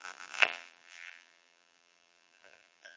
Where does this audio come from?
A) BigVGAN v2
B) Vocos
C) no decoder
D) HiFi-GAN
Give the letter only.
A